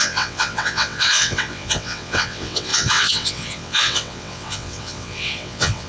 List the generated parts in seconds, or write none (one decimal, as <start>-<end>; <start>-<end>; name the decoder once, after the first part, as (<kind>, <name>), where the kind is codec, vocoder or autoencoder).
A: 0.0-5.9 (vocoder, WaveNeXt)